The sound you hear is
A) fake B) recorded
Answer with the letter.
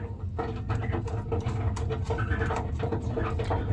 B